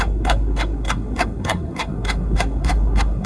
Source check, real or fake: fake